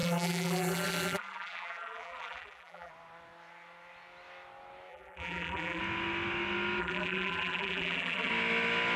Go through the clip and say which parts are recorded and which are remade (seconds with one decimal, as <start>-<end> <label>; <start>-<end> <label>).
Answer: 0.0-2.9 remade; 2.9-4.9 recorded; 4.9-5.8 remade; 5.8-6.8 recorded; 6.8-8.3 remade; 8.3-9.0 recorded